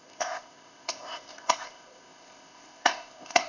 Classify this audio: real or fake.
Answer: fake